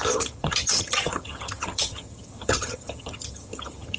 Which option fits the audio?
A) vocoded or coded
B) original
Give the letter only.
A